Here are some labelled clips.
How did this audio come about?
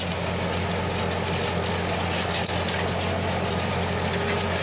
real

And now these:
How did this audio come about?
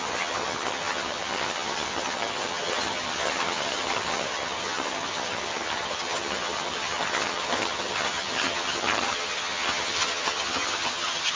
fake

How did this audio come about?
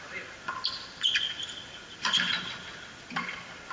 real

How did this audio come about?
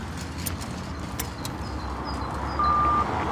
real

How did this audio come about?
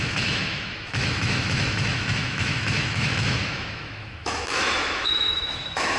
fake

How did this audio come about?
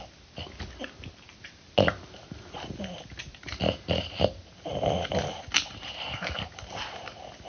real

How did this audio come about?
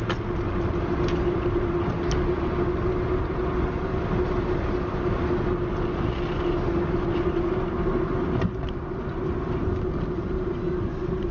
real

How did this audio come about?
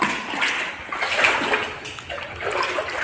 real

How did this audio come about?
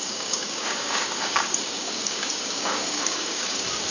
fake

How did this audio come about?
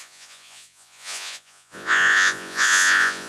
fake